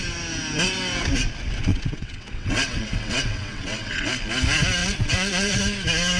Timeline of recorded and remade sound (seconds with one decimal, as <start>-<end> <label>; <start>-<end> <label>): 0.0-1.7 recorded; 1.7-4.1 remade; 4.1-4.8 recorded; 4.8-5.6 remade; 5.6-6.2 recorded